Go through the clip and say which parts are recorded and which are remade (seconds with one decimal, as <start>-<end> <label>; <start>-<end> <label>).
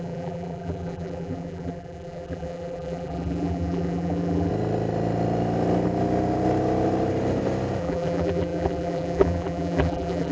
0.0-4.5 remade; 4.5-7.8 recorded; 7.8-10.3 remade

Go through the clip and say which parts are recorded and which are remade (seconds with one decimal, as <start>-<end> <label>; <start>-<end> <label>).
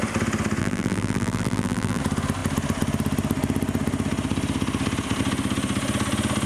0.0-0.6 recorded; 0.6-2.0 remade; 2.0-6.5 recorded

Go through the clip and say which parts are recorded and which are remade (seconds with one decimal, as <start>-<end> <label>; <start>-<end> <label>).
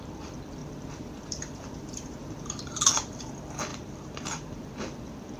0.0-0.6 recorded; 0.6-3.2 remade; 3.2-3.7 recorded; 3.7-4.5 remade; 4.5-5.4 recorded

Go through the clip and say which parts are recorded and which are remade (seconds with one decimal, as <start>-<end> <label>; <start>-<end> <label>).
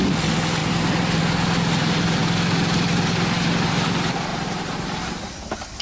0.0-0.6 recorded; 0.6-1.2 remade; 1.2-4.3 recorded; 4.3-5.0 remade; 5.0-5.8 recorded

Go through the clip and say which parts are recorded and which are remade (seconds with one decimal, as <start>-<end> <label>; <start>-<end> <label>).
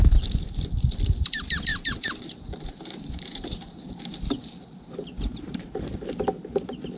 0.0-1.7 recorded; 1.7-4.0 remade; 4.0-5.3 recorded; 5.3-6.1 remade; 6.1-7.0 recorded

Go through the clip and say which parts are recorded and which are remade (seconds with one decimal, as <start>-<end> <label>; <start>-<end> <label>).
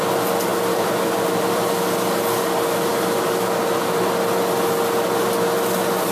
0.0-0.5 recorded; 0.5-1.7 remade; 1.7-6.1 recorded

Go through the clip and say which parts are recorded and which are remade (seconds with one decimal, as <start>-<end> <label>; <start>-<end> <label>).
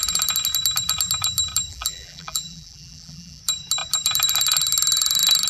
0.0-1.7 recorded; 1.7-3.4 remade; 3.4-5.5 recorded